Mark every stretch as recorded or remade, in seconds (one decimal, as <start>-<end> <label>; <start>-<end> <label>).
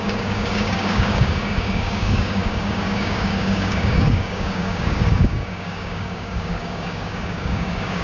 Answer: 0.0-8.0 remade